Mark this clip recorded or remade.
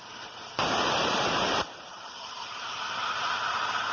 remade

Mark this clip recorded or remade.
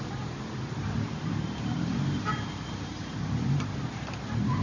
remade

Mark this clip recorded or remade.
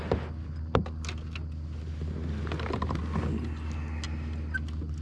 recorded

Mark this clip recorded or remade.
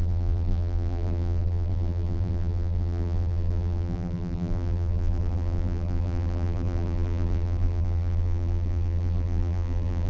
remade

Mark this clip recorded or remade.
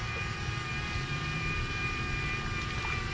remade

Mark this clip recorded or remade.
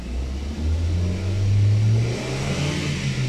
recorded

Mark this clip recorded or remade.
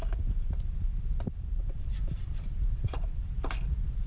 remade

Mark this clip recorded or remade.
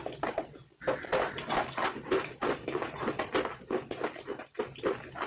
recorded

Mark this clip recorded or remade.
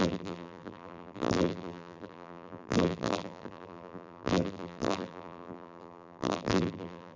remade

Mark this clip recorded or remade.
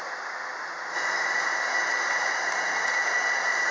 recorded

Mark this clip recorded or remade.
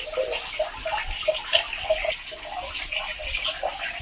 recorded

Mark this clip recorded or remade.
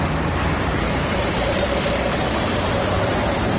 remade